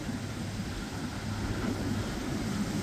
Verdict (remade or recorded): recorded